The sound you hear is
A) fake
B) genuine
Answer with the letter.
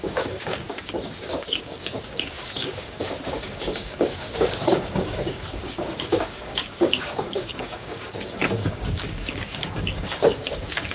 A